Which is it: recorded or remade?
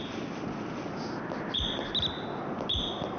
recorded